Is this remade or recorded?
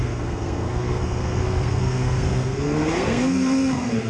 remade